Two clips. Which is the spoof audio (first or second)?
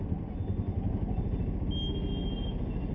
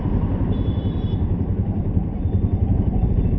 second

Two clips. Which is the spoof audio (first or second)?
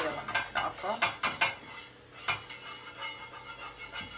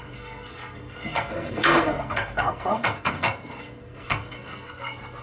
second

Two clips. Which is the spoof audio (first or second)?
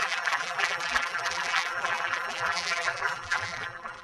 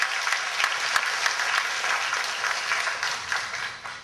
first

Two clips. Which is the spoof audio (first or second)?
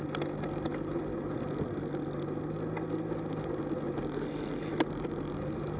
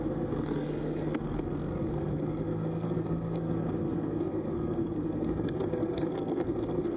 second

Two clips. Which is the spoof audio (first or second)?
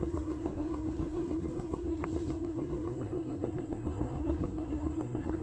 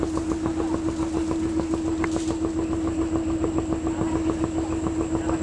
first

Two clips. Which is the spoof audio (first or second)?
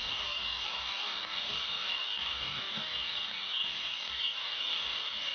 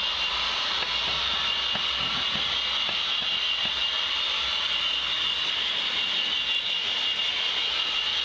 first